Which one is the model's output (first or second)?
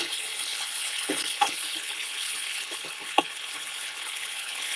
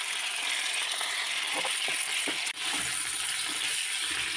first